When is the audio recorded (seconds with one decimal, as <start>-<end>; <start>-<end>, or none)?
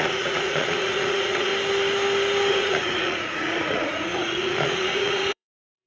1.5-2.5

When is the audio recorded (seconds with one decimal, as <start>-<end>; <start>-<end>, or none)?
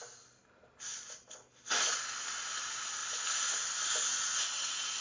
0.0-5.0